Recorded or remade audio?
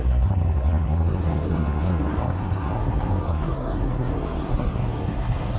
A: remade